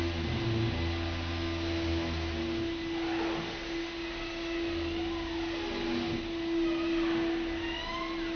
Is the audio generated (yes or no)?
no